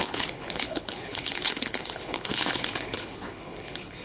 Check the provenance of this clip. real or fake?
fake